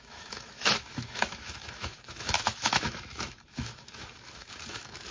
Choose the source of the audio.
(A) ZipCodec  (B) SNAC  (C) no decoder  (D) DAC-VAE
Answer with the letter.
D